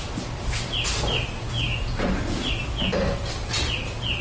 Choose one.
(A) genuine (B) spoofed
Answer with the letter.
A